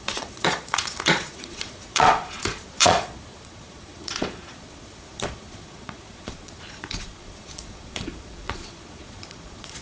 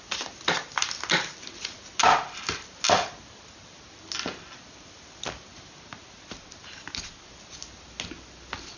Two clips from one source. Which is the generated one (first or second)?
first